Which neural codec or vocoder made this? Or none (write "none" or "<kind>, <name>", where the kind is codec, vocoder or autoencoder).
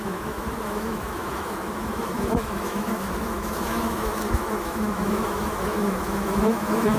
autoencoder, DAC-VAE